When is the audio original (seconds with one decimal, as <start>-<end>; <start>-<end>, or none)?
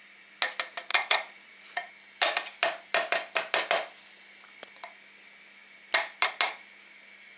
0.0-0.9; 1.9-7.4